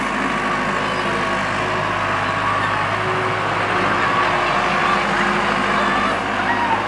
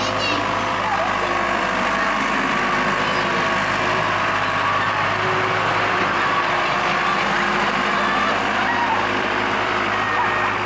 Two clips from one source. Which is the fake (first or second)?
second